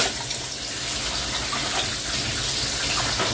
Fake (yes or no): no